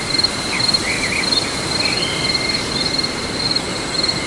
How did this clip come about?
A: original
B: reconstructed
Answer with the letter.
A